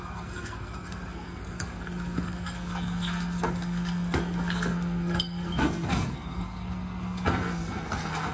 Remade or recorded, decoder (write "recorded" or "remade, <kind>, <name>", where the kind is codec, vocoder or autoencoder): remade, codec, SNAC